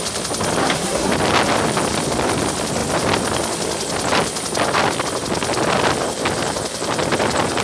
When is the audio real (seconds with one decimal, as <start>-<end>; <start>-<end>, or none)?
0.0-0.6; 1.1-7.6

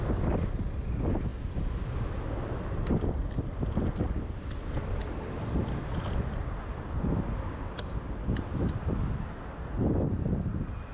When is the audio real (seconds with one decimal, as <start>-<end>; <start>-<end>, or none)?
0.0-10.9

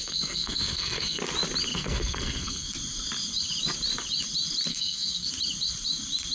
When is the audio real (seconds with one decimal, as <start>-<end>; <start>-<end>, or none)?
1.2-1.7; 2.7-4.7; 5.3-6.3

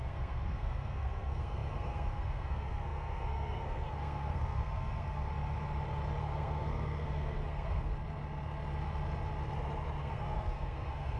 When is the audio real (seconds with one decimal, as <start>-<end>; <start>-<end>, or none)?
5.3-6.2; 7.9-10.0

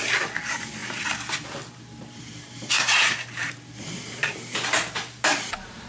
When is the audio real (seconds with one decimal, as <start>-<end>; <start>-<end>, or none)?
0.0-5.9

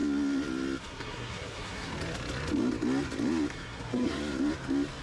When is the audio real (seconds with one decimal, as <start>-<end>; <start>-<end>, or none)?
0.0-0.8; 1.9-3.5; 4.2-5.0